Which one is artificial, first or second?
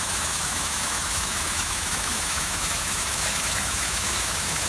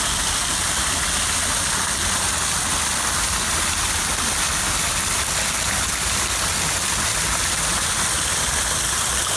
first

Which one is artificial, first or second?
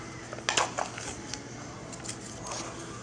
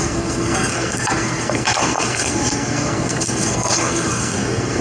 second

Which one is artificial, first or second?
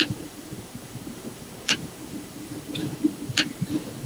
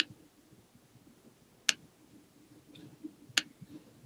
first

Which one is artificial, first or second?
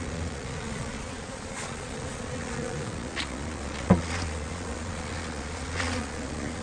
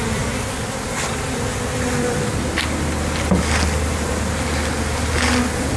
first